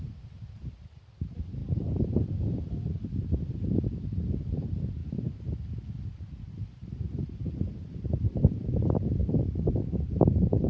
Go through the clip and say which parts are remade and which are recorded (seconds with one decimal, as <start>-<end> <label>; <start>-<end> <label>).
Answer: 0.0-5.0 remade; 5.0-6.3 recorded; 6.3-10.7 remade